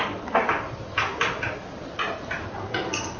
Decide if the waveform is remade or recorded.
recorded